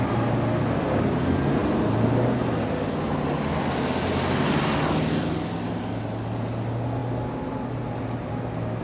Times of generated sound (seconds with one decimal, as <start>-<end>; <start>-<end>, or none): none